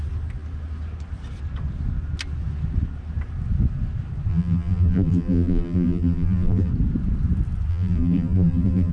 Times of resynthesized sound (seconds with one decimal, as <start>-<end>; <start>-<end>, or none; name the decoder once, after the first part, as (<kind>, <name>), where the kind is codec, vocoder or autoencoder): 4.3-6.7 (vocoder, BigVGAN v2); 7.7-8.9